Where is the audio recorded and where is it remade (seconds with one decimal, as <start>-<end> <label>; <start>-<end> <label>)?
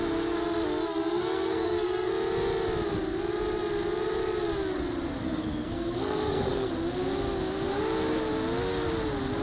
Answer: 0.0-1.0 recorded; 1.0-2.1 remade; 2.1-5.2 recorded; 5.2-6.7 remade; 6.7-9.4 recorded